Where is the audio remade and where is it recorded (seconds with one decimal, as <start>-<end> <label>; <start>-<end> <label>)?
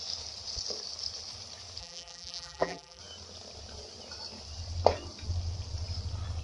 0.0-1.8 recorded; 1.8-3.0 remade; 3.0-6.4 recorded